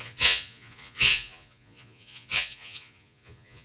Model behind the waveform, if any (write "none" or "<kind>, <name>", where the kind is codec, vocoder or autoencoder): vocoder, Vocos